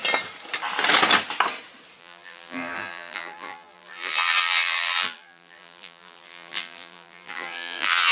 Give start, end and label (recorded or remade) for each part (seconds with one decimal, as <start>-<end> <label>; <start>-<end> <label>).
0.0-2.0 recorded; 2.0-8.1 remade